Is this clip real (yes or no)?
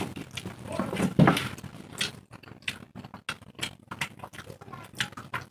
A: yes